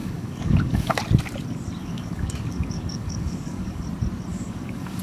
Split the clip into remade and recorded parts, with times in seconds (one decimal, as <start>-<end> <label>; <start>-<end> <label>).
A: 0.0-1.0 remade; 1.0-1.8 recorded; 1.8-3.8 remade; 3.8-4.3 recorded; 4.3-5.0 remade

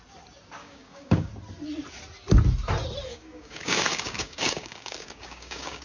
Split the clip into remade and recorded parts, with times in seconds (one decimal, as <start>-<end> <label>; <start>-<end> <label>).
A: 0.0-0.6 recorded; 0.6-1.3 remade; 1.3-3.1 recorded; 3.1-5.8 remade

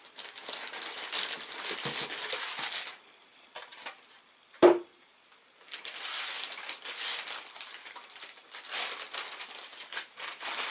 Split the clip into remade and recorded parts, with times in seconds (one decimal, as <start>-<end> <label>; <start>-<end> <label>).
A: 0.0-10.7 recorded

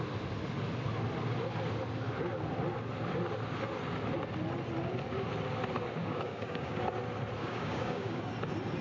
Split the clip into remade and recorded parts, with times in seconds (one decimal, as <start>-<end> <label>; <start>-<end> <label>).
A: 0.0-6.0 recorded; 6.0-6.8 remade; 6.8-7.4 recorded; 7.4-8.2 remade; 8.2-8.8 recorded

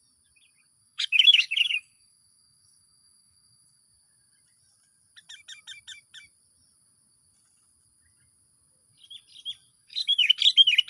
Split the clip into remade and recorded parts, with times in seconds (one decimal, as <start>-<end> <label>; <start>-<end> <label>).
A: 0.0-0.8 recorded; 0.8-3.8 remade; 3.8-9.7 recorded; 9.7-10.4 remade; 10.4-10.9 recorded

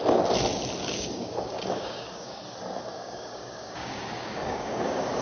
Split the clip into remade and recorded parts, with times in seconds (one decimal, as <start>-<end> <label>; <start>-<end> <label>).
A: 0.0-0.8 recorded; 0.8-2.4 remade; 2.4-2.9 recorded; 2.9-5.2 remade

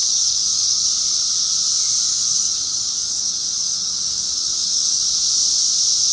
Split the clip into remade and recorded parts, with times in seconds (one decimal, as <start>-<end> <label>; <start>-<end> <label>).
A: 0.0-0.9 remade; 0.9-2.1 recorded; 2.1-5.0 remade; 5.0-6.1 recorded